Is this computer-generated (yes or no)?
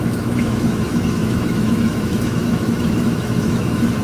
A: yes